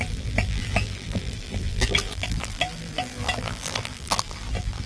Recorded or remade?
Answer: remade